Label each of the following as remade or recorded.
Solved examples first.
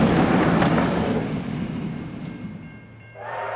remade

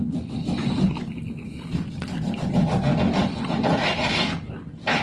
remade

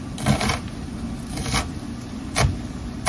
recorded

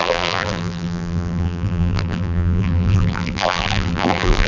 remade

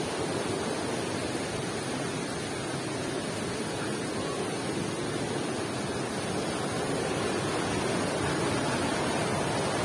recorded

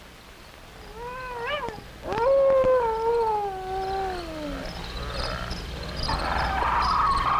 recorded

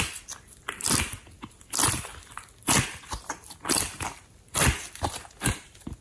remade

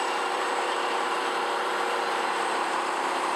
remade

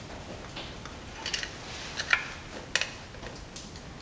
recorded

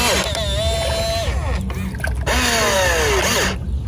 recorded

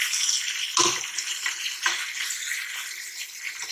recorded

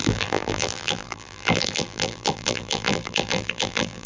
remade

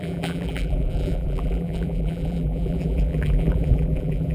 remade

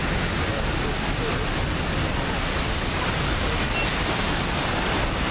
recorded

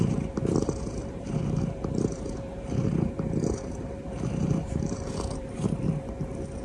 remade